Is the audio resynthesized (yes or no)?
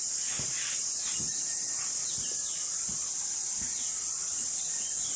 yes